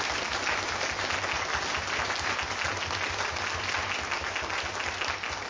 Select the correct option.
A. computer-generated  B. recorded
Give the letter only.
B